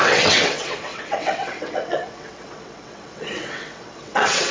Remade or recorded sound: remade